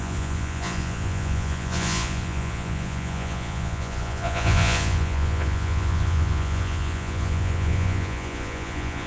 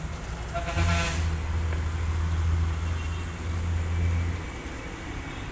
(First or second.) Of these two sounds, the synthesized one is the first